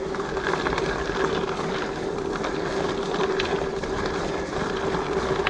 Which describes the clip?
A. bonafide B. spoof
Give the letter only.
A